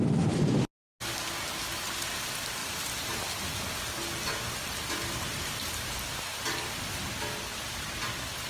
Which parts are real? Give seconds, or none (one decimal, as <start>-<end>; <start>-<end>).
0.0-8.5